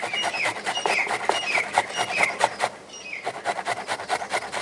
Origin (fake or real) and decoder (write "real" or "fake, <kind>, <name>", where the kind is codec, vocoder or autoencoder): real